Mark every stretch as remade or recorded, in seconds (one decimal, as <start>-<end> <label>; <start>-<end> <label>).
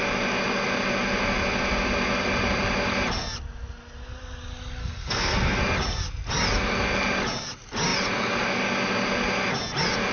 0.0-4.8 recorded; 4.8-5.6 remade; 5.6-10.1 recorded